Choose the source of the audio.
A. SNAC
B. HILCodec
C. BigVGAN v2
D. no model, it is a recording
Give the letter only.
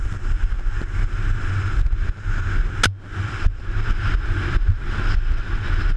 D